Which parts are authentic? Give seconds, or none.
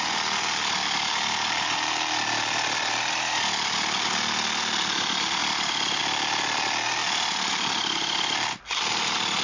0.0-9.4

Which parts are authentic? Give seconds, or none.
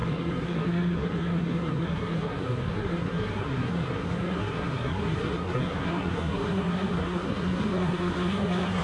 none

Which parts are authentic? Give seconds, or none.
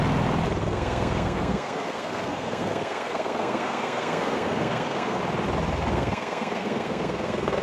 0.0-0.6; 5.2-5.9